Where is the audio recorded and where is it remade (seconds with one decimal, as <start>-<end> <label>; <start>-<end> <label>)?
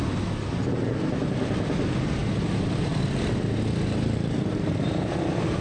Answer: 0.0-5.6 recorded